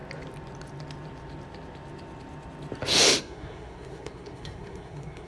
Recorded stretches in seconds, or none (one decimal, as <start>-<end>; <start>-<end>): 0.0-3.2